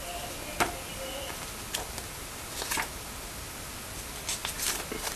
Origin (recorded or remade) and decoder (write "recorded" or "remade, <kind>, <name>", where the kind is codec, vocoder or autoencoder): recorded